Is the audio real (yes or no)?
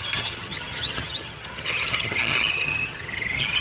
no